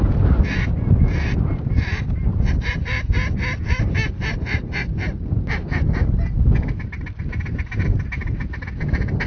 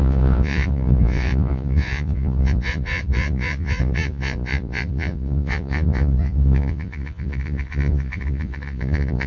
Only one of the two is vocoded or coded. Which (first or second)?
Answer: second